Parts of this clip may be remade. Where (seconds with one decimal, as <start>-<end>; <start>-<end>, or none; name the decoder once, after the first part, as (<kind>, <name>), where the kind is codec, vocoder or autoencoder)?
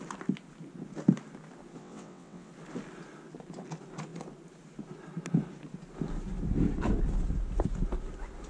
1.8-2.5 (vocoder, WaveNeXt)